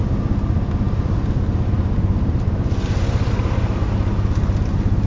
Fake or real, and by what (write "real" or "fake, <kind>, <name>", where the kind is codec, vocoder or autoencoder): real